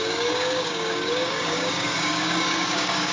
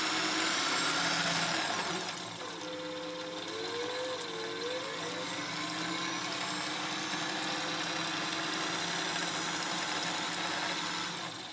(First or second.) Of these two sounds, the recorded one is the second